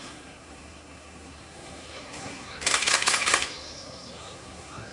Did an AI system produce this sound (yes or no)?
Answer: yes